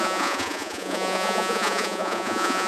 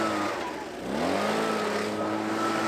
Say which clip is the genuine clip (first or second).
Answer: second